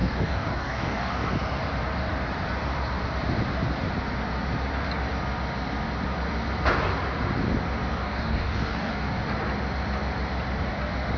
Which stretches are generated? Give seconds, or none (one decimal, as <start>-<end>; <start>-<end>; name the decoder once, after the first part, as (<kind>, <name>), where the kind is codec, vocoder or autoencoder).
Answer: 0.0-1.3 (codec, DAC); 7.9-8.9